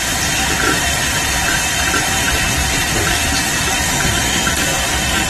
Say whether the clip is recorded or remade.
recorded